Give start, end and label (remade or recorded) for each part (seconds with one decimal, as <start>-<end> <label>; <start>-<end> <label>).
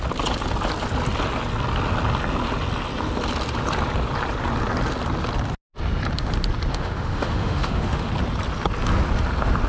0.0-6.7 recorded; 6.7-8.1 remade; 8.1-9.7 recorded